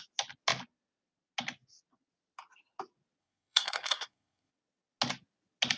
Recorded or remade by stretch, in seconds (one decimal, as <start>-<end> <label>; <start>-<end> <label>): 0.0-3.2 recorded; 3.2-4.5 remade; 4.5-5.8 recorded